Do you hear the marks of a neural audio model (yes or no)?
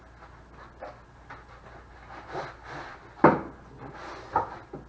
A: no